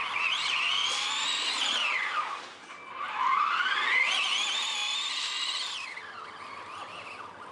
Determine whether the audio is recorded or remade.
recorded